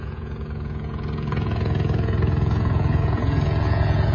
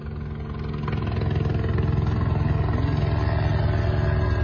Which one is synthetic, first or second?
first